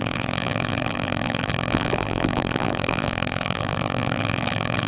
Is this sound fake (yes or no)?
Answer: yes